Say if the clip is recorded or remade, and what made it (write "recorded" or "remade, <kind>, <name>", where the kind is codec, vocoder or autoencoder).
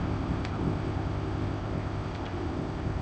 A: remade, codec, ZipCodec